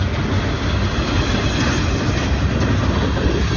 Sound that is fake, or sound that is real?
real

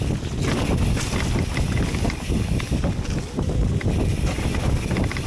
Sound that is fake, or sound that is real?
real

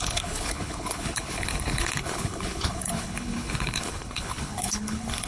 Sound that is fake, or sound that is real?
fake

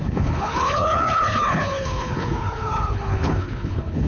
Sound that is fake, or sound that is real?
fake